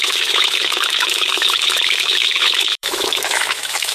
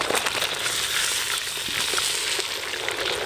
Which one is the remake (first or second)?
first